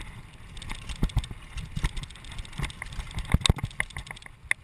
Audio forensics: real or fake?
real